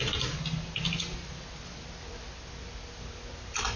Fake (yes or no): no